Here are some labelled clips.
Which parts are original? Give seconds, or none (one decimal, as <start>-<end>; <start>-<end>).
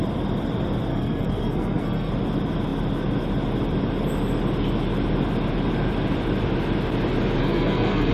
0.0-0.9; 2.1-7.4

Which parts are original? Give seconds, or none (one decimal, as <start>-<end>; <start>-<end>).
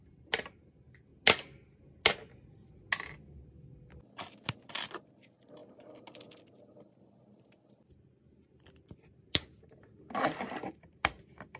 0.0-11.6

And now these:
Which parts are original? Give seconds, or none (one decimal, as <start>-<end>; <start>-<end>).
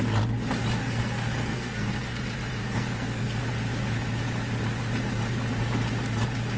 0.0-0.8; 2.2-2.6; 3.4-6.6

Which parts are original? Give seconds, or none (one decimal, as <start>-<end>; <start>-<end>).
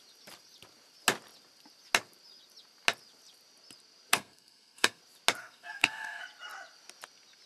0.0-4.1; 5.0-5.4; 6.2-7.5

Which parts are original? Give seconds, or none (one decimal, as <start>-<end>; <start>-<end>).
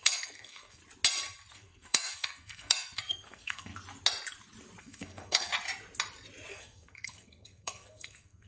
0.8-1.5; 3.7-4.8; 5.5-6.5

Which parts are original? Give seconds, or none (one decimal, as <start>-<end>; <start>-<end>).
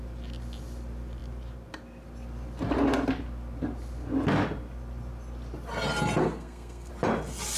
0.0-6.2; 6.9-7.6